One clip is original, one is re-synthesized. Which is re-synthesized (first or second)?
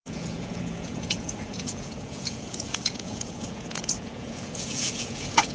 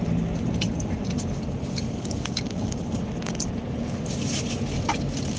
first